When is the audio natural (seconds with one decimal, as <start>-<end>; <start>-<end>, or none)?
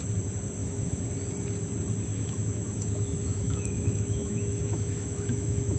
0.0-0.6; 1.1-2.1